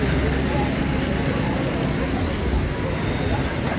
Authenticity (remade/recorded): recorded